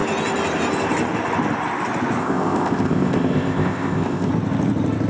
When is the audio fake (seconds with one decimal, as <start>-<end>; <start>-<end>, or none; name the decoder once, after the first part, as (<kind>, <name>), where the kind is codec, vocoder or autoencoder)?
2.2-4.3 (codec, ZipCodec)